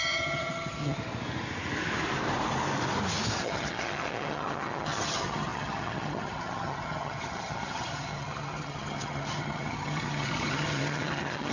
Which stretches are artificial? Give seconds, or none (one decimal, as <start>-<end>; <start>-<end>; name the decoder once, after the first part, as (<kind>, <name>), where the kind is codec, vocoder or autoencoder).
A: 0.0-1.0 (vocoder, HiFi-GAN); 3.4-11.5